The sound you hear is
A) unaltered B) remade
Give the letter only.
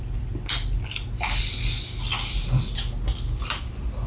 A